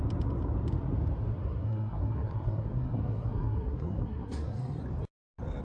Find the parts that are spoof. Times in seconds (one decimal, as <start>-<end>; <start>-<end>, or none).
1.4-4.8